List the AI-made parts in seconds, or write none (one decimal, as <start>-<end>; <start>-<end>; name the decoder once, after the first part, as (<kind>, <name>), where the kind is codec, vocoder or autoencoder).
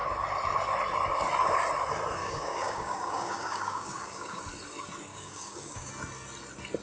2.2-4.4 (codec, DAC); 5.1-5.9